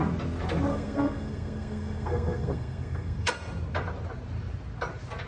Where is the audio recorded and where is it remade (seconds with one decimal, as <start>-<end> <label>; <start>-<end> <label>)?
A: 0.0-0.7 recorded; 0.7-3.3 remade; 3.3-5.3 recorded